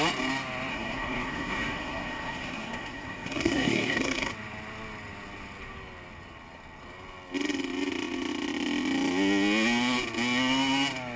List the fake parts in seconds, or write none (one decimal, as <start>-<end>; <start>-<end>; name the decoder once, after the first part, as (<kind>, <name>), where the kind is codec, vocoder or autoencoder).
0.7-4.3 (codec, SNAC)